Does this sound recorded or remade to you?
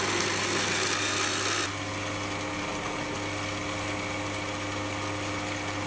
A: recorded